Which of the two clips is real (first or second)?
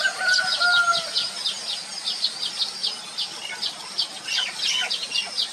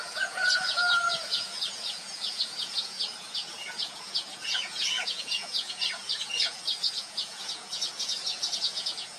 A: first